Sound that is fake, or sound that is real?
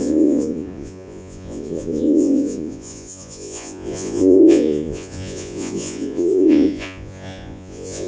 fake